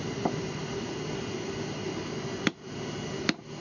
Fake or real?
real